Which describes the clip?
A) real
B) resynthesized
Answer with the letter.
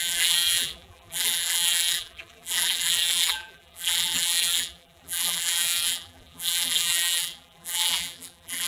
B